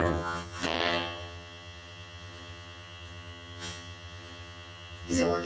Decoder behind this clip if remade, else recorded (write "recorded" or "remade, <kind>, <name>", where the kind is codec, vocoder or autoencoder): remade, vocoder, HiFi-GAN